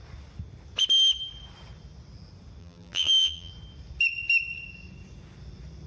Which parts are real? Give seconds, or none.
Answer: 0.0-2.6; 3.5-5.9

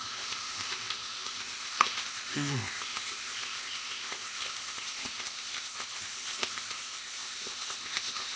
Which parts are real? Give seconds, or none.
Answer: none

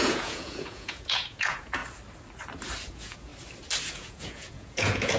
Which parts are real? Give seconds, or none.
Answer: 1.8-2.9; 3.3-3.9

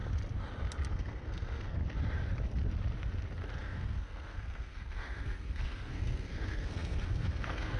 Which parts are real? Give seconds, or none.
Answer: 0.0-0.9; 1.8-3.6

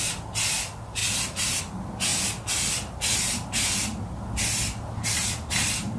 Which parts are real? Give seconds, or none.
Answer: 0.0-6.0